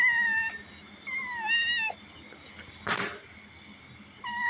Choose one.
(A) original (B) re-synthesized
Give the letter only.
A